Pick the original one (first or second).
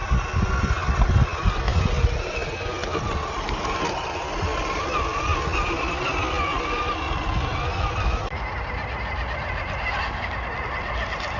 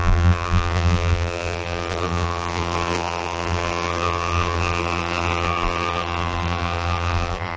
first